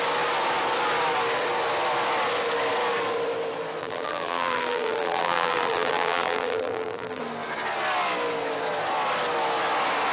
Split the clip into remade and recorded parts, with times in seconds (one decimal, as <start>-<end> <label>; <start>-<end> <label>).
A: 0.0-3.8 recorded; 3.8-7.2 remade; 7.2-10.1 recorded